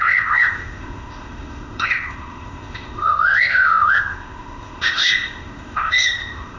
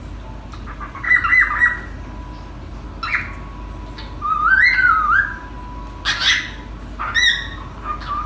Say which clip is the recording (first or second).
second